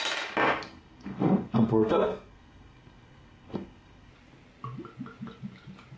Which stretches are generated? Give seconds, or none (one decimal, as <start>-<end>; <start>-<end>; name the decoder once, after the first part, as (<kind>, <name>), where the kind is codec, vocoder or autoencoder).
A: 0.7-4.1 (codec, SNAC)